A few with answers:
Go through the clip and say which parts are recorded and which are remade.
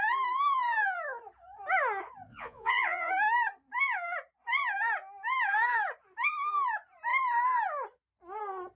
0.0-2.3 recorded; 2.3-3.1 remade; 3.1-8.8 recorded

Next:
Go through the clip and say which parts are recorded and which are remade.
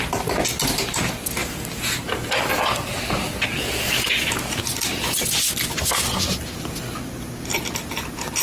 0.0-1.4 recorded; 1.4-2.5 remade; 2.5-8.4 recorded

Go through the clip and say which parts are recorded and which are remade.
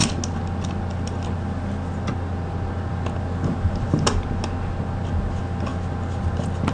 0.0-6.7 recorded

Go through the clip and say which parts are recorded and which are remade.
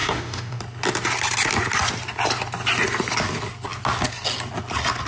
0.0-0.6 remade; 0.6-5.1 recorded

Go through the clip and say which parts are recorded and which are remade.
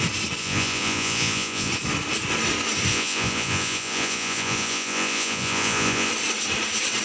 0.0-0.4 recorded; 0.4-1.7 remade; 1.7-2.9 recorded; 2.9-6.1 remade; 6.1-7.0 recorded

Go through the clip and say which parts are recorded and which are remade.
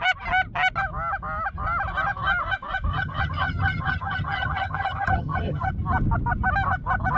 0.0-2.9 recorded; 2.9-5.7 remade; 5.7-7.2 recorded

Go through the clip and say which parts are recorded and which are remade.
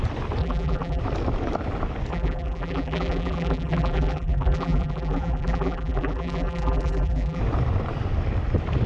0.0-0.4 recorded; 0.4-1.0 remade; 1.0-2.1 recorded; 2.1-7.4 remade; 7.4-8.9 recorded